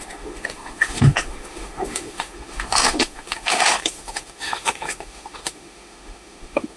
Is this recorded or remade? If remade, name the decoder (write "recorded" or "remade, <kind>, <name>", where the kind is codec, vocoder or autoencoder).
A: remade, autoencoder, DAC-VAE